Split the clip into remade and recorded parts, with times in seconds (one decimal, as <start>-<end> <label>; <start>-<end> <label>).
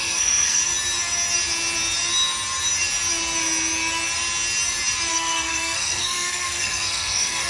0.0-0.6 remade; 0.6-5.1 recorded; 5.1-7.5 remade